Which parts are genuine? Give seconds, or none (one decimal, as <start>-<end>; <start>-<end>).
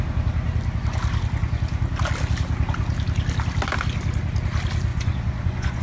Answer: 0.0-4.9